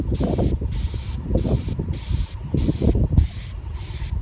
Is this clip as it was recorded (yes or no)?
yes